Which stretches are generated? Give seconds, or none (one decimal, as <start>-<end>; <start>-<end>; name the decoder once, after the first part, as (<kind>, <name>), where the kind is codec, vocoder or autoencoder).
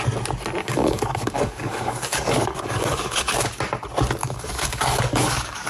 0.6-3.5 (codec, DAC); 4.2-5.7